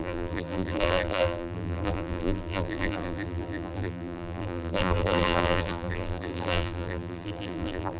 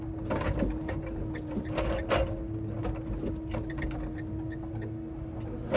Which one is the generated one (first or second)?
first